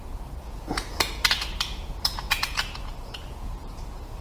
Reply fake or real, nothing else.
fake